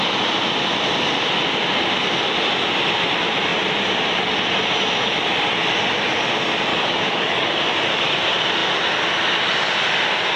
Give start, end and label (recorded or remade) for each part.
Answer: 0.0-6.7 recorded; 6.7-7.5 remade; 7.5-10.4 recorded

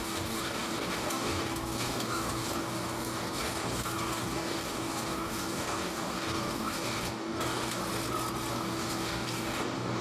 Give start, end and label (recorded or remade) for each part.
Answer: 0.0-7.8 remade; 7.8-8.5 recorded; 8.5-10.0 remade

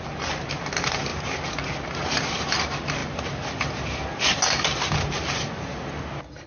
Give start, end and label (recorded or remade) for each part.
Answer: 0.0-6.5 recorded

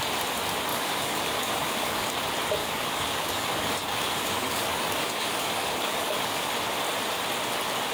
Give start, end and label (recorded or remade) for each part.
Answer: 0.0-0.7 recorded; 0.7-2.1 remade; 2.1-2.6 recorded; 2.6-6.5 remade; 6.5-7.9 recorded